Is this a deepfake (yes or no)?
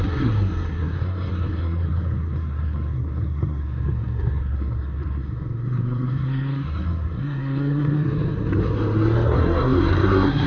yes